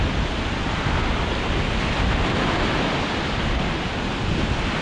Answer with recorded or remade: recorded